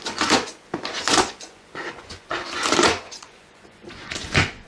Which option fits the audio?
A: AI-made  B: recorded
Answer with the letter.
A